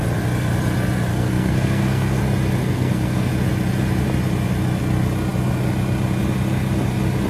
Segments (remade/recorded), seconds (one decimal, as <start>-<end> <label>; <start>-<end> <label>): 0.0-1.1 recorded; 1.1-2.2 remade; 2.2-2.6 recorded; 2.6-3.3 remade; 3.3-7.3 recorded